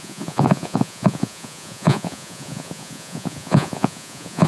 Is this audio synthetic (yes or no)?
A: yes